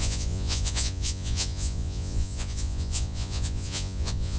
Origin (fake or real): fake